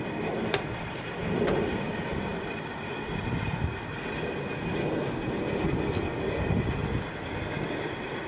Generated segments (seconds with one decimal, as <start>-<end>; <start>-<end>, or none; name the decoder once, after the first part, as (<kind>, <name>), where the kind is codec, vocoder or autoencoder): none